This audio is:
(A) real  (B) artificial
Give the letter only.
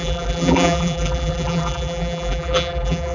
B